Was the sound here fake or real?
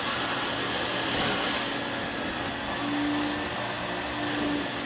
real